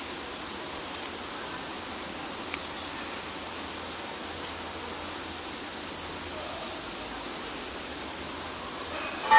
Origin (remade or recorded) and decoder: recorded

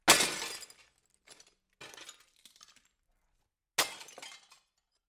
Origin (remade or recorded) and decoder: recorded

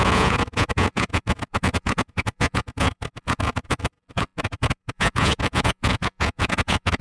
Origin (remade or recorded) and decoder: remade, vocoder, Vocos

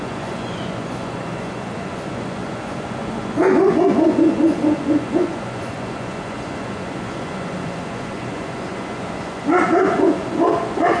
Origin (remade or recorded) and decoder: remade, vocoder, Vocos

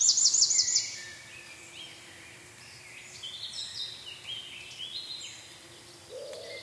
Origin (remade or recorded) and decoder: recorded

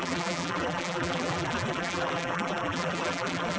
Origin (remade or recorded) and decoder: remade, vocoder, BigVGAN v2